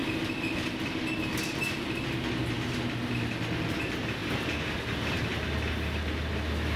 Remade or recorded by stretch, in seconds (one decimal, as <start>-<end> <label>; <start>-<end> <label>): 0.0-6.8 recorded